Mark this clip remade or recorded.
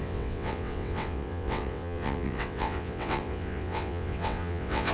remade